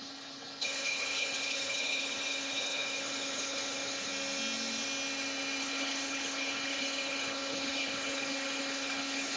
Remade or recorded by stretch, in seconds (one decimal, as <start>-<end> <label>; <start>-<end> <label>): 0.0-4.1 remade; 4.1-5.6 recorded; 5.6-9.4 remade